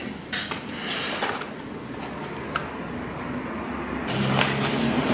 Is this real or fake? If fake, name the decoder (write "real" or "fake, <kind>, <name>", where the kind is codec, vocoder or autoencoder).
real